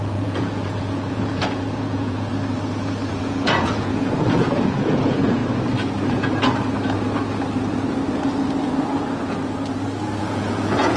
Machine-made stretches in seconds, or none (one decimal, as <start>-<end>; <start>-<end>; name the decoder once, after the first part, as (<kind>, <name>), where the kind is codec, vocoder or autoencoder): 0.0-2.3 (vocoder, Vocos); 3.1-5.4; 10.2-11.0